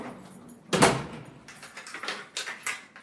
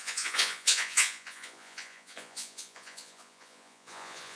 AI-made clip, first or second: second